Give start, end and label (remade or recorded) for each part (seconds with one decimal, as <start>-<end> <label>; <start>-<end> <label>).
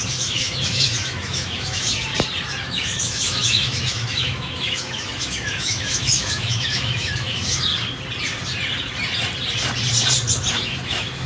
0.0-2.1 remade; 2.1-2.6 recorded; 2.6-7.7 remade; 7.7-10.5 recorded; 10.5-11.3 remade